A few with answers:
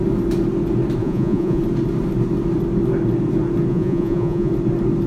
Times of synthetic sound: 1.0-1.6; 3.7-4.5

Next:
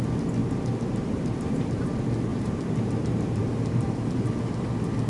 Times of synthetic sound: 0.4-1.9; 2.3-4.3

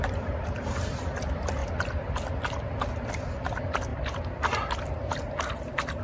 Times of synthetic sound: none

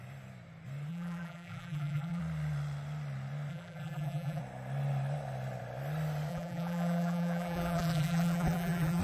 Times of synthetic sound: 0.9-2.2; 3.5-4.4; 6.3-9.0

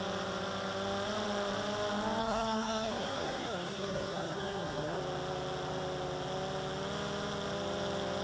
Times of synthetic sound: 2.2-5.0

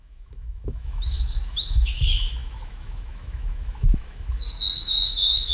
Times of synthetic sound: 0.0-5.5

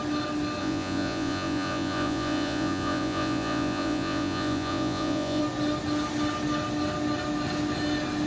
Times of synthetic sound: 0.6-5.4